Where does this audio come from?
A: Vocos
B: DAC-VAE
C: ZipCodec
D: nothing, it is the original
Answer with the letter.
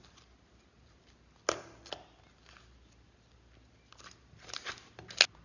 D